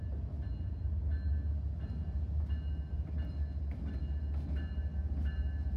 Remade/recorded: recorded